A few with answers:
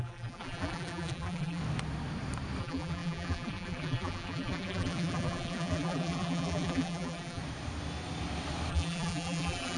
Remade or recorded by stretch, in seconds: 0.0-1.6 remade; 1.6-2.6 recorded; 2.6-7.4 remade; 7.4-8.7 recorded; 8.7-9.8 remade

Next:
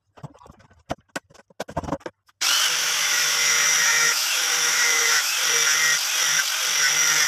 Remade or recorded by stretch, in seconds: 0.0-2.8 recorded; 2.8-5.3 remade; 5.3-7.3 recorded

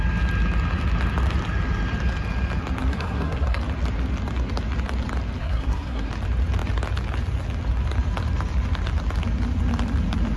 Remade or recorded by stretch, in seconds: 0.0-2.9 recorded; 2.9-3.6 remade; 3.6-5.4 recorded; 5.4-6.1 remade; 6.1-10.4 recorded